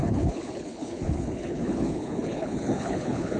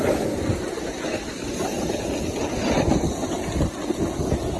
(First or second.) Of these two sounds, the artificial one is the first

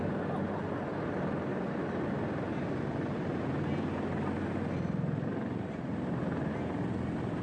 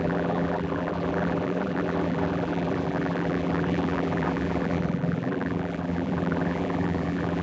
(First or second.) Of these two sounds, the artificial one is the second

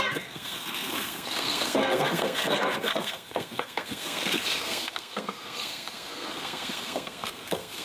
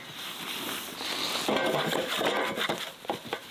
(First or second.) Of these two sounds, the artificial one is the first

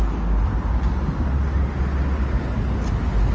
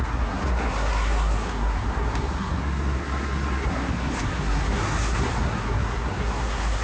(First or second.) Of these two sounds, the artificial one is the second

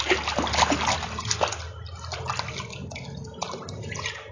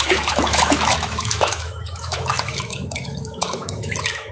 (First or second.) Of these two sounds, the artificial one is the second